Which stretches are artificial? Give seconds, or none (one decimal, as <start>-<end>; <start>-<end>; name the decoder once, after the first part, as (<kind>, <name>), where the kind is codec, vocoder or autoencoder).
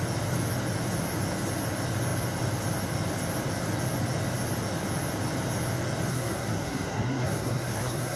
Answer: 6.1-8.2 (codec, SNAC)